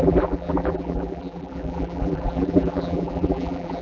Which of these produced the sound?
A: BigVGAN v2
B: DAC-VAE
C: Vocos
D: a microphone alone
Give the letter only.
A